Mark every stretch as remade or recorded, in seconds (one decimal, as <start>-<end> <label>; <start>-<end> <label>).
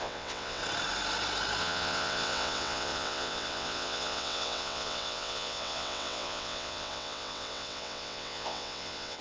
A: 0.0-0.6 remade; 0.6-1.6 recorded; 1.6-9.2 remade